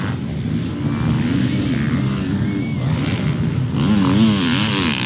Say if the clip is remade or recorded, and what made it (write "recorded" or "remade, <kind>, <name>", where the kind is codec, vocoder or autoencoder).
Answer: recorded